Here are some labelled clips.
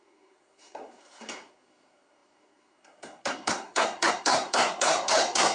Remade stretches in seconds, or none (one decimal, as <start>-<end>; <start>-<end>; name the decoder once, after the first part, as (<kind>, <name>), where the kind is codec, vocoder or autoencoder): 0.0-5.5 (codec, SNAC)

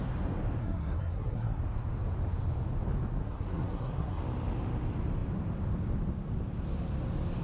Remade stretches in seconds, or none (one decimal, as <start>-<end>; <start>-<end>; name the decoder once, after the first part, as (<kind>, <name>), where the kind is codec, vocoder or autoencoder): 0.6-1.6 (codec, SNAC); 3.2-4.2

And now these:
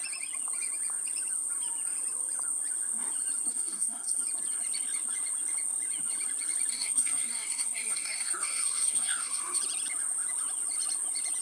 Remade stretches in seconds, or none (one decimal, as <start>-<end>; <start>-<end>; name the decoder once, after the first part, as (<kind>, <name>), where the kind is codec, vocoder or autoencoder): 3.5-4.2 (codec, SNAC); 6.7-9.6